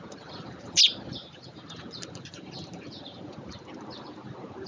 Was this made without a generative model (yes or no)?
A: yes